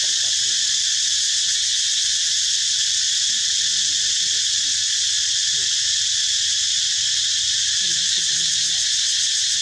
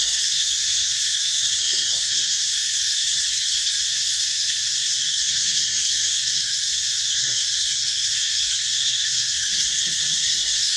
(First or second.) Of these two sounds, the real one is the first